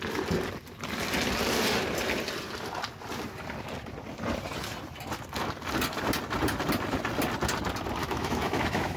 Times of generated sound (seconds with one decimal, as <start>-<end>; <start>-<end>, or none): 8.0-9.0